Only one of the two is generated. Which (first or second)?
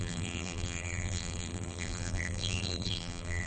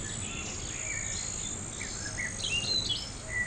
first